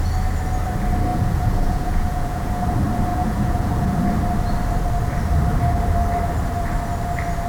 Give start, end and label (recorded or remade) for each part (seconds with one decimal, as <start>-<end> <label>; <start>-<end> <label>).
0.0-1.1 recorded; 1.1-2.6 remade; 2.6-3.1 recorded; 3.1-4.1 remade; 4.1-7.5 recorded